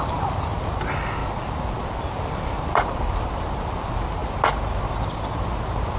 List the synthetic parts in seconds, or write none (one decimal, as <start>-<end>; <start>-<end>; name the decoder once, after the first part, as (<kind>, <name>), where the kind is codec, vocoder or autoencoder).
none